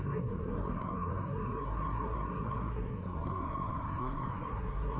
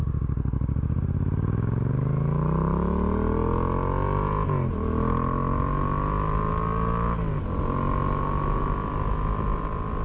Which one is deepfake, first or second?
first